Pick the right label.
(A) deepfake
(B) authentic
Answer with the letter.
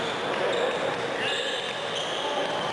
B